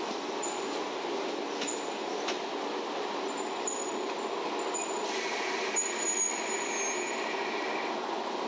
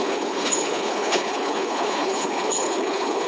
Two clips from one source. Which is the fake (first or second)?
second